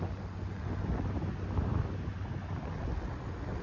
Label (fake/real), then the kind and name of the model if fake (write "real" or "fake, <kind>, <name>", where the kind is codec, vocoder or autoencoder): real